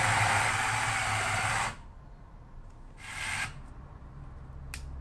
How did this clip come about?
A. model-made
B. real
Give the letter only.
B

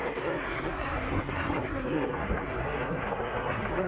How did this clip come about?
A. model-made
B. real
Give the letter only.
A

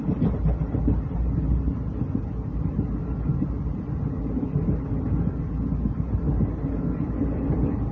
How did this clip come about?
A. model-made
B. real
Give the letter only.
B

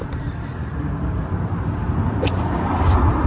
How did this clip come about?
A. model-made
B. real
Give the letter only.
B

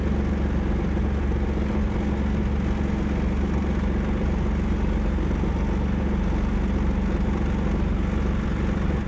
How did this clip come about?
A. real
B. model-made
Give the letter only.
A